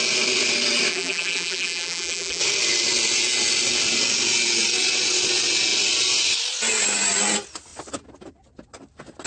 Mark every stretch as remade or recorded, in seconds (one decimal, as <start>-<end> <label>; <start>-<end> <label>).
0.0-0.9 recorded; 0.9-2.4 remade; 2.4-9.3 recorded